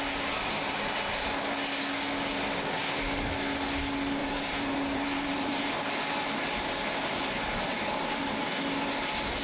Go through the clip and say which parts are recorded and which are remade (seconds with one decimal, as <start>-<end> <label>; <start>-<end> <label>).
0.0-4.2 recorded; 4.2-5.7 remade; 5.7-9.4 recorded